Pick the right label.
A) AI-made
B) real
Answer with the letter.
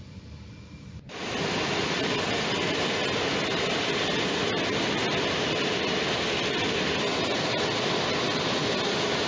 B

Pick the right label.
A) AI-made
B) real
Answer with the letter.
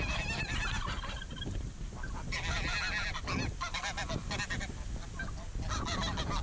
B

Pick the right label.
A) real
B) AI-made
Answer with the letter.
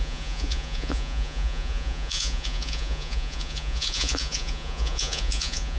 B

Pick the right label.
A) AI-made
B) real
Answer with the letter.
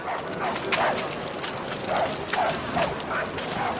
B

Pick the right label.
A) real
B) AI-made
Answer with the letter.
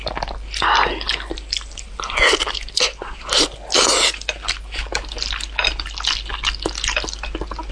A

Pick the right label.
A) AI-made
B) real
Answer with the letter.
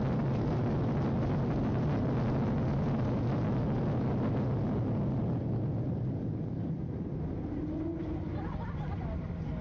B